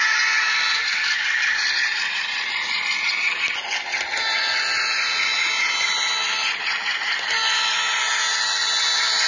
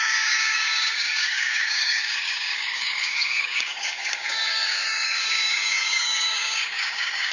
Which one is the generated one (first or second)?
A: second